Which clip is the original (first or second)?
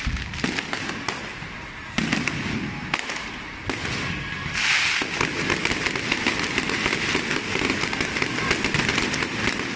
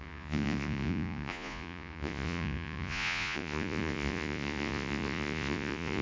first